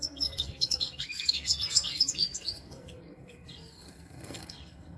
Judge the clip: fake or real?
fake